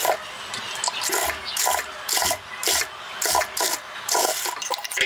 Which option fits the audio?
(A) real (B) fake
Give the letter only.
A